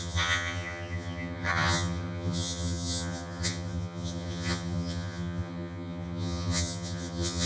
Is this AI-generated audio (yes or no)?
yes